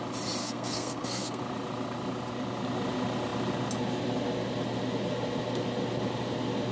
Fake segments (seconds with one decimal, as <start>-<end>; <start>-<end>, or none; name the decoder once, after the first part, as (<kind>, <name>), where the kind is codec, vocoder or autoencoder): 0.4-1.4 (codec, SNAC)